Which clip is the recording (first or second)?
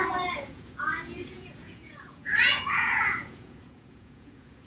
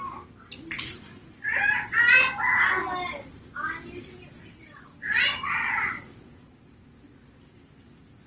second